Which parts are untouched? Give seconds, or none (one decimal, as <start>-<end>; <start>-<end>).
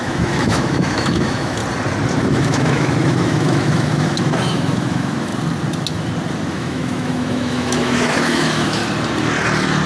1.6-2.2; 5.3-6.5; 8.8-9.9